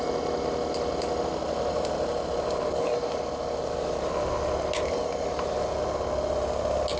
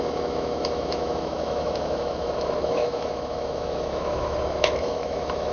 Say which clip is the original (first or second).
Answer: first